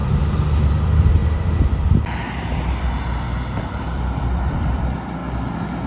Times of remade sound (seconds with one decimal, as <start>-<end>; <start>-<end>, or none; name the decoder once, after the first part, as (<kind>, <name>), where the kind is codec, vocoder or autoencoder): 0.0-1.2 (vocoder, BigVGAN v2); 3.6-5.2